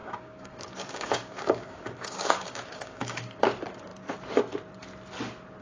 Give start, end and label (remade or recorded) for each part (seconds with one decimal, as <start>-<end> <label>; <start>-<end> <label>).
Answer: 0.0-3.4 remade; 3.4-5.6 recorded